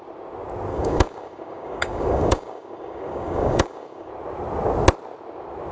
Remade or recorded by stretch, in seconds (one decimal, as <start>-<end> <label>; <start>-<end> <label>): 0.0-0.7 recorded; 0.7-4.1 remade; 4.1-5.7 recorded